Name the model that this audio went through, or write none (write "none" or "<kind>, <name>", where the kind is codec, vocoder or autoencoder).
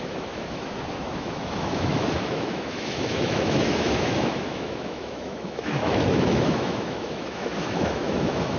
autoencoder, DAC-VAE